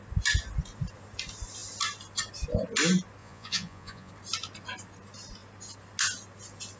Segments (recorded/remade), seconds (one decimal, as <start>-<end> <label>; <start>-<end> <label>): 0.0-3.2 recorded; 3.2-4.1 remade; 4.1-6.8 recorded